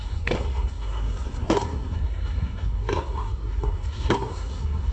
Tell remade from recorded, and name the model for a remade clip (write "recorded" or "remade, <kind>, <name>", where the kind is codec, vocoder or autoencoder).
remade, codec, SNAC